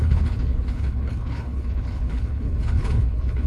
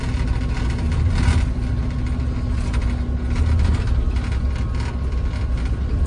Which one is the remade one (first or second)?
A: first